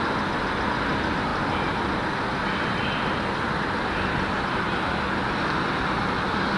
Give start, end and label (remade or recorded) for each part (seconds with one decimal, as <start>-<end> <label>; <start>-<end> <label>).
0.0-6.6 recorded